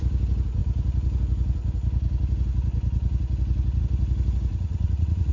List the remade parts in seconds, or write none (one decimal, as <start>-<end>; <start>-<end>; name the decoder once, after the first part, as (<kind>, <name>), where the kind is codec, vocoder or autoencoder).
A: 4.5-5.3 (vocoder, Vocos)